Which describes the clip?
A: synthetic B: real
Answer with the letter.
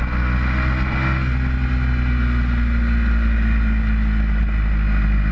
B